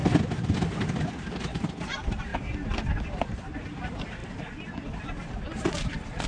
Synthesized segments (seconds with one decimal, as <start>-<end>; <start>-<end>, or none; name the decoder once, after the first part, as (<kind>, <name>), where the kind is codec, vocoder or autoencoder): 1.1-2.3 (vocoder, BigVGAN v2); 3.0-6.3